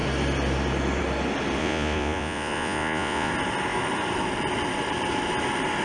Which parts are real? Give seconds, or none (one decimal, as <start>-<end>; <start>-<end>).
0.0-1.6; 3.3-5.8